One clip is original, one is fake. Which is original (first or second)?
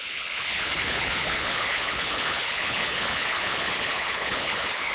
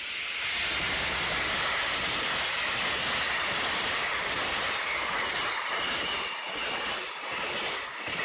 second